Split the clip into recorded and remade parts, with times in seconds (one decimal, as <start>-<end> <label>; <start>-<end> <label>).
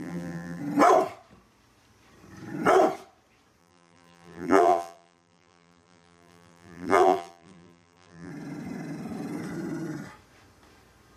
0.0-0.6 remade; 0.6-3.6 recorded; 3.6-8.3 remade; 8.3-11.2 recorded